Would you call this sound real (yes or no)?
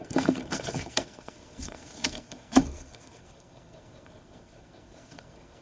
no